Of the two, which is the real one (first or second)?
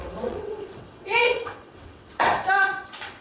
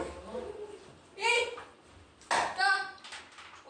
second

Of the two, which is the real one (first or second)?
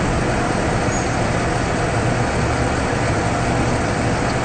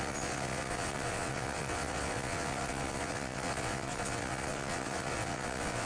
first